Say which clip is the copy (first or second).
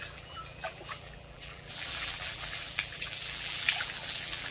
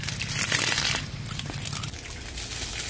first